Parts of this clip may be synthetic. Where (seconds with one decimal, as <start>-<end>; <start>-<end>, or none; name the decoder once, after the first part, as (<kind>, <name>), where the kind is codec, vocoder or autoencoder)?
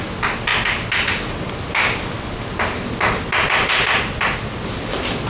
none